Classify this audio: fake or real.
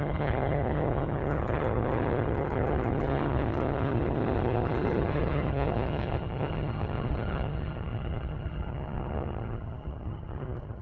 fake